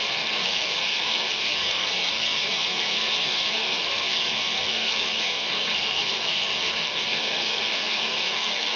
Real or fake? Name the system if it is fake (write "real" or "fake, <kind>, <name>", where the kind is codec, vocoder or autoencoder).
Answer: fake, codec, SNAC